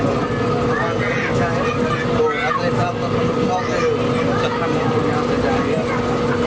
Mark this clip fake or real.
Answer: real